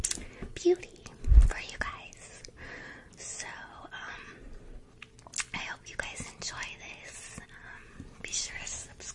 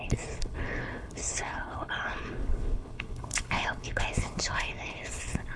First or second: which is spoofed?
second